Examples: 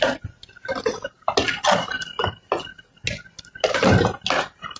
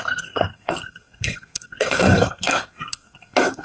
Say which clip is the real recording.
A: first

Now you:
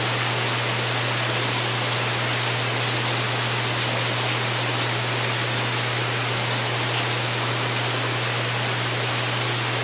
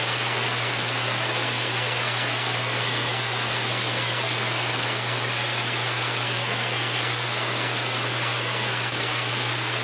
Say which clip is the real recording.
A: first